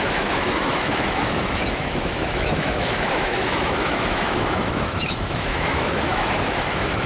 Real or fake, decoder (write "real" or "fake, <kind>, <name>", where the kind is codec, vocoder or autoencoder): fake, autoencoder, DAC-VAE